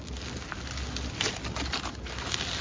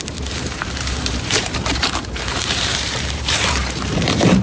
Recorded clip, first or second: first